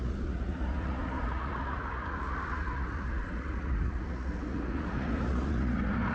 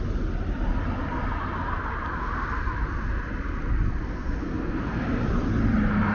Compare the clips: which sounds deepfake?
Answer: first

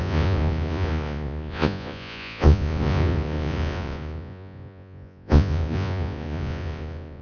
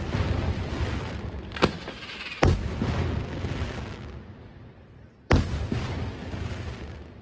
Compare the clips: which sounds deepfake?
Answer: first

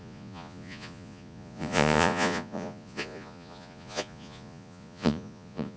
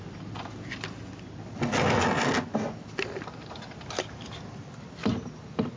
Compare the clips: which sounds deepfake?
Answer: first